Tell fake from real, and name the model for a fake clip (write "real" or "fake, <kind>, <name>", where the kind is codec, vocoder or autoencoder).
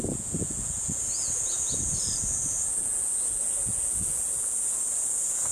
fake, vocoder, Vocos